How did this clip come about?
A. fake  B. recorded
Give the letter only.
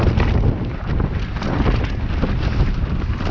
B